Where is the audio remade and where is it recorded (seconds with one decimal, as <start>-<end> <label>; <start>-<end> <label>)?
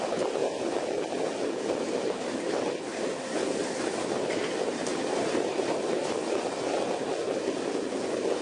0.0-2.9 recorded; 2.9-3.4 remade; 3.4-4.9 recorded; 4.9-5.6 remade; 5.6-8.4 recorded